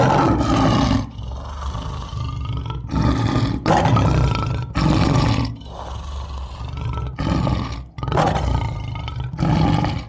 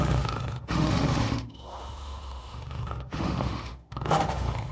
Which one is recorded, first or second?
first